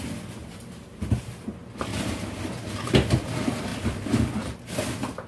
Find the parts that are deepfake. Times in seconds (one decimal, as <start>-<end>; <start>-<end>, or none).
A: 0.4-1.3; 1.9-2.4